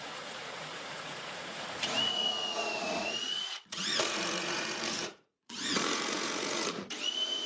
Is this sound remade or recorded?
remade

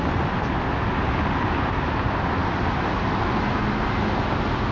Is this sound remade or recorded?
recorded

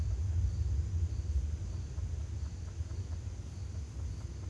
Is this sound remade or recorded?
recorded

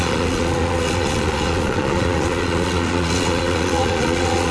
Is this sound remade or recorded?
remade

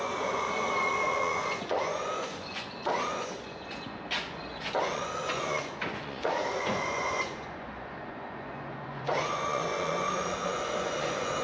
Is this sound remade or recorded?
remade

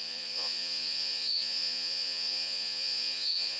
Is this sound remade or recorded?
remade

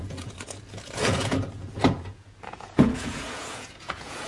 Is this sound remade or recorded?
remade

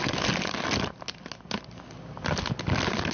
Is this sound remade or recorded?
recorded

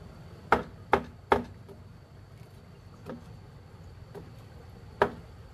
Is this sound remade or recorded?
recorded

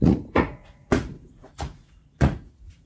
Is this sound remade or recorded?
remade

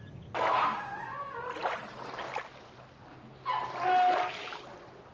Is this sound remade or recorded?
recorded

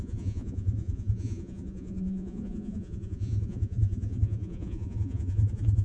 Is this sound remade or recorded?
remade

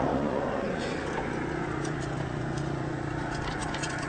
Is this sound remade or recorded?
remade